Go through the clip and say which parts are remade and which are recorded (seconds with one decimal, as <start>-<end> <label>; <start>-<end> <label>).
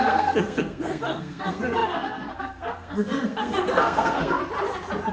0.0-4.4 remade; 4.4-5.1 recorded